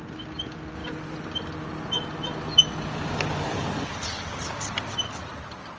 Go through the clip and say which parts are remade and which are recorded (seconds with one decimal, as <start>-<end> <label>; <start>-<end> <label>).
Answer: 0.0-5.8 recorded